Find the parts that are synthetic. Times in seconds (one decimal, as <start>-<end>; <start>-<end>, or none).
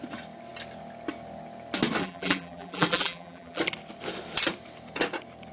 2.0-3.6